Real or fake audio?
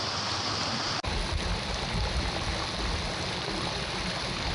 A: real